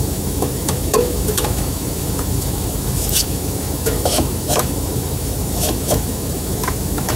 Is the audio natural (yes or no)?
no